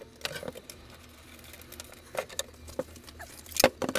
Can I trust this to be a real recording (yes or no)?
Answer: yes